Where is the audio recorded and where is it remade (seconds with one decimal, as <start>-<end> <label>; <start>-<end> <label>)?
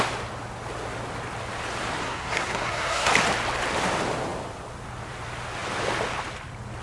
0.0-2.0 recorded; 2.0-3.1 remade; 3.1-6.8 recorded